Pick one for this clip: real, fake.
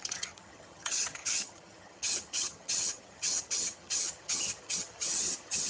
fake